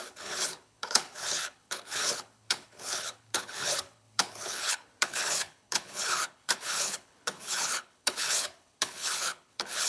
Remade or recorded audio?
remade